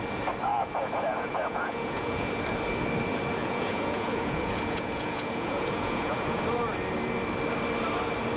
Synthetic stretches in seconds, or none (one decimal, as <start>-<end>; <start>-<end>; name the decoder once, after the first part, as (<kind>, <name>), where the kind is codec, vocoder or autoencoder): 0.5-2.3 (vocoder, Vocos); 3.4-6.4